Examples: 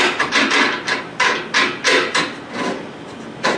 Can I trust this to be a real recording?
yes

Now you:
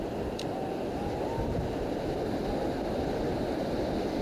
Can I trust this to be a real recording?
yes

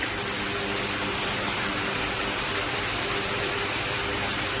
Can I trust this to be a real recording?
no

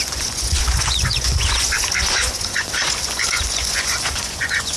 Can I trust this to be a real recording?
no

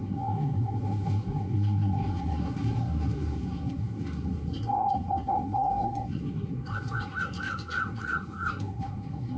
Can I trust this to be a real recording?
no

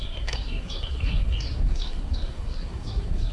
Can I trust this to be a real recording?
no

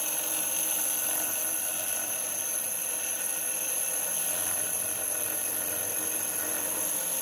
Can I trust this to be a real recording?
yes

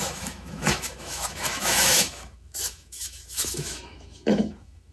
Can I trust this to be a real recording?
no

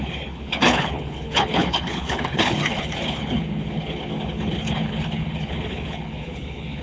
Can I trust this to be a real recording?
no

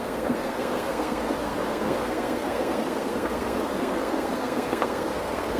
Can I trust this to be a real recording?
no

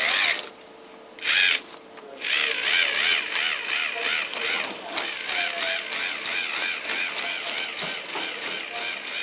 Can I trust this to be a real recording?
yes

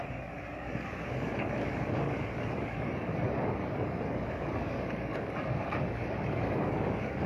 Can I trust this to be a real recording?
no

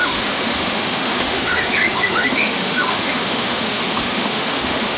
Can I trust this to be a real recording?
no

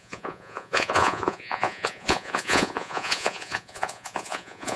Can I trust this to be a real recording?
no